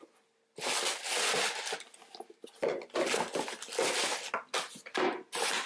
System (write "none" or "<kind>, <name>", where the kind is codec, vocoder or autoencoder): none